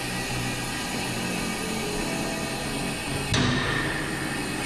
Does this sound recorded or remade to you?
recorded